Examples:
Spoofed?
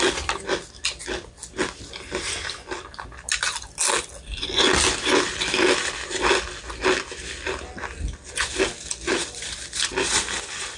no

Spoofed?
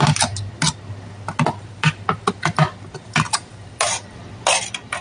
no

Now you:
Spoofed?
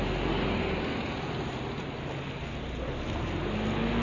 no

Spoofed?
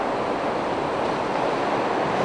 no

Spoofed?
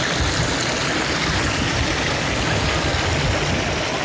no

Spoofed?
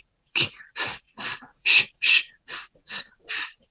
yes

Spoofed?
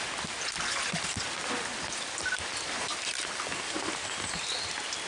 no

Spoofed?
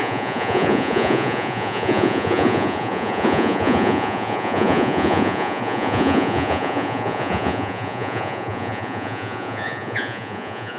yes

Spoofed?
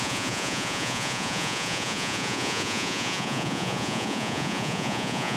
yes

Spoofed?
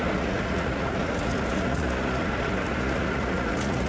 yes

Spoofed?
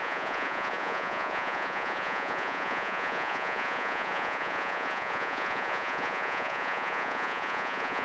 yes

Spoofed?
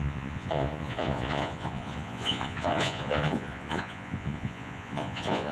yes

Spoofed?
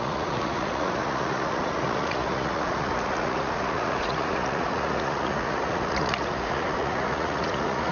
yes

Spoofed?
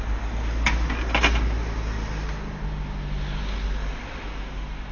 no